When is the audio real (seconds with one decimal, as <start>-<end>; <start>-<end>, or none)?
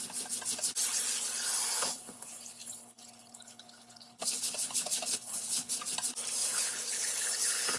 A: 0.0-1.7; 5.8-6.4